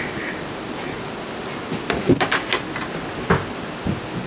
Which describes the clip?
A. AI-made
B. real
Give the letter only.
B